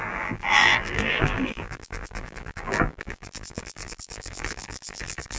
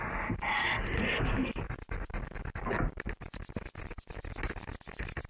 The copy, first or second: first